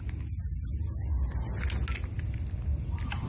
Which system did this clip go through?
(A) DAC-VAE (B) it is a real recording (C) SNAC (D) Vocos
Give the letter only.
B